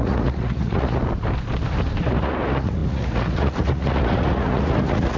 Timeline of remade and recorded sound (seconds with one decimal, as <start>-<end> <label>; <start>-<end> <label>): 0.0-1.0 remade; 1.0-2.0 recorded; 2.0-5.2 remade